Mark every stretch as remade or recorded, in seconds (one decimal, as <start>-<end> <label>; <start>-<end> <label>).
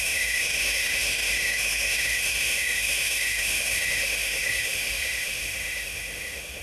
0.0-6.6 remade